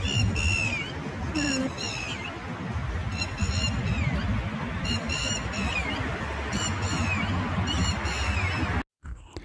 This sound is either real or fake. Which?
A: real